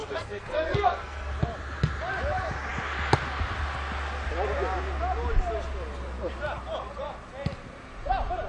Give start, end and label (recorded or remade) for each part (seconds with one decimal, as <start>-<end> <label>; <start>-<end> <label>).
0.0-1.3 remade; 1.3-8.5 recorded